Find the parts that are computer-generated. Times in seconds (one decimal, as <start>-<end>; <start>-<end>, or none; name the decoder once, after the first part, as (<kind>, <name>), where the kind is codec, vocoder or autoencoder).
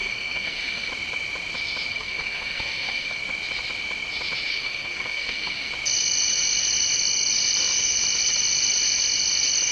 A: 0.0-0.9 (codec, SNAC); 1.9-3.2; 4.5-5.7